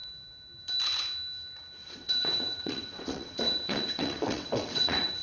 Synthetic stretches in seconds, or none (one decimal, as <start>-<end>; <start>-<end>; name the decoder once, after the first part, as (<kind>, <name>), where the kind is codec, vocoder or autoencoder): 1.8-5.2 (vocoder, WaveNeXt)